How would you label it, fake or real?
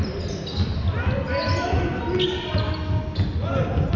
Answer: real